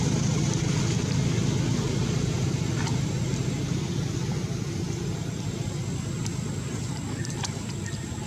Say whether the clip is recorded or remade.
recorded